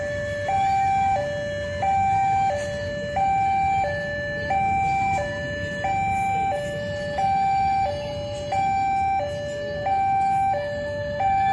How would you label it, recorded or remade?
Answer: recorded